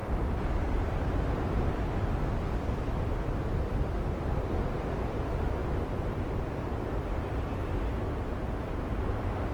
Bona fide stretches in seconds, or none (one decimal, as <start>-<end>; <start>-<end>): 0.0-5.6; 7.9-9.5